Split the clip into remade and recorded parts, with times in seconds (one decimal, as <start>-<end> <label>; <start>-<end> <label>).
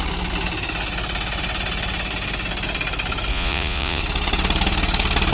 0.0-3.3 recorded; 3.3-4.0 remade; 4.0-5.3 recorded